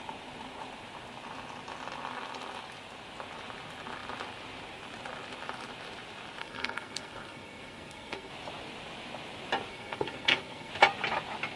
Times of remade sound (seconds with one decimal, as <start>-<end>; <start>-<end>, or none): 6.4-8.3; 9.7-10.7